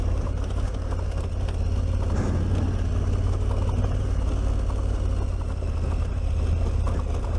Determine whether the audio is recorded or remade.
recorded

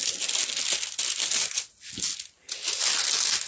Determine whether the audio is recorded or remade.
recorded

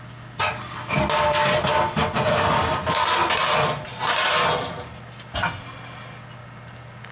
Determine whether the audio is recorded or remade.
recorded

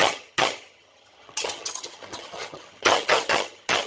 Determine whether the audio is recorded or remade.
remade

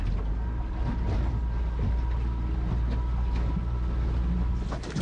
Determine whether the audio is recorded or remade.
recorded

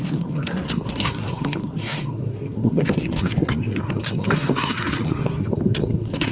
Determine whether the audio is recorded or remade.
remade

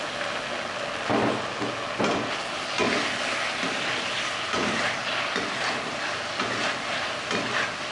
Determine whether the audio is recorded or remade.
recorded